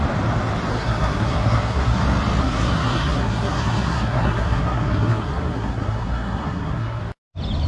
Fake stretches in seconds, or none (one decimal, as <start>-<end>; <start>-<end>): 0.7-2.0; 2.4-7.0